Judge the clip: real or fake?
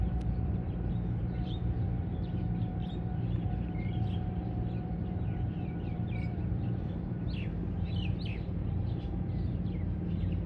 fake